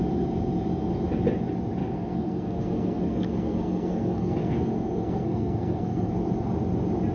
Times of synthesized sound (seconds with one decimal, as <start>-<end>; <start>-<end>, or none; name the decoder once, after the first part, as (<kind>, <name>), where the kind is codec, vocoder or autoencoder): 1.8-6.1 (codec, SNAC)